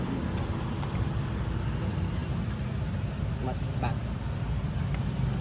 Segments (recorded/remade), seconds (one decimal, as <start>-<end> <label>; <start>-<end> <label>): 0.0-5.4 recorded